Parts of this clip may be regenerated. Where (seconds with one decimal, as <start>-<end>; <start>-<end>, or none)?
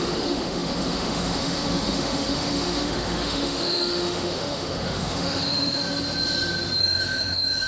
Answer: 0.0-5.8; 6.8-7.7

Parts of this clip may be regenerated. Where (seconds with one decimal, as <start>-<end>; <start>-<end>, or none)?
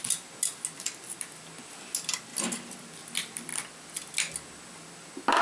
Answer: none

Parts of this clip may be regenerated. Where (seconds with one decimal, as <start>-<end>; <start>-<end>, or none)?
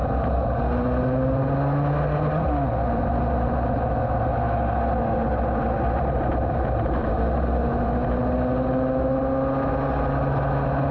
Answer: none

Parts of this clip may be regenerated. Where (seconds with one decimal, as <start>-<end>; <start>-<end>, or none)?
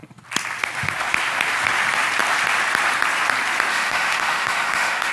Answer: 3.7-5.1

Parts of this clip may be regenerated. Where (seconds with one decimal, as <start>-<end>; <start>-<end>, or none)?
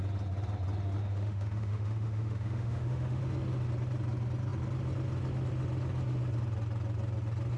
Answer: 1.1-3.2